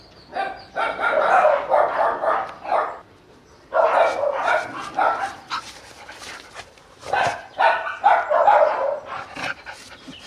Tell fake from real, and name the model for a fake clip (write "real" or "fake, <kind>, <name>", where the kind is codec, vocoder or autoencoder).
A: fake, vocoder, BigVGAN v2